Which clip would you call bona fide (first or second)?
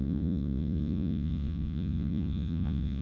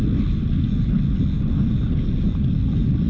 second